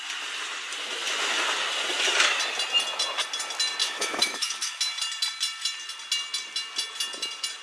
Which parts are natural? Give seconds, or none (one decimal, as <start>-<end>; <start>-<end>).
0.0-3.8; 4.8-7.6